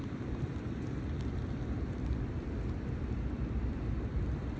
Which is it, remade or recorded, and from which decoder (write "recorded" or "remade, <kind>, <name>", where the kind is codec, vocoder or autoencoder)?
recorded